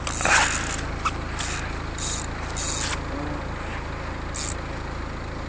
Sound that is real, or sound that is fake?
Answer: real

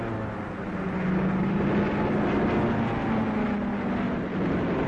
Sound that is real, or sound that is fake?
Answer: real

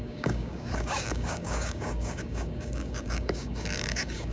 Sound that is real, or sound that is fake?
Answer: fake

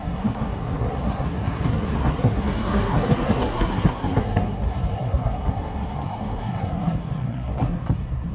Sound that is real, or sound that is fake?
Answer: fake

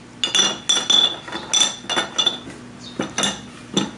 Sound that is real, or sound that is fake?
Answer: real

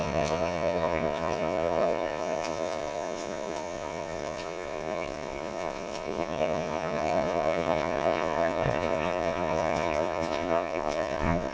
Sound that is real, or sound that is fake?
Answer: fake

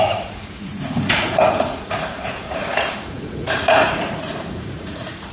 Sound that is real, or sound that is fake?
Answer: fake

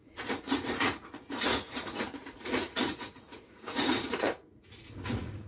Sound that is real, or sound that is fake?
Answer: fake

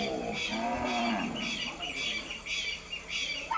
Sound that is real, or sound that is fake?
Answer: real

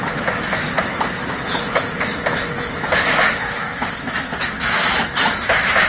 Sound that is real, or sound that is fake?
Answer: fake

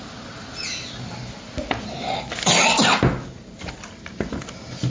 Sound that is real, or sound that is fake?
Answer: real